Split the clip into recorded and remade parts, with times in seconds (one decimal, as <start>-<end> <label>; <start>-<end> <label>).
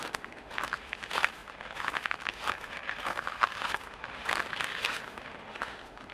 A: 0.0-6.1 remade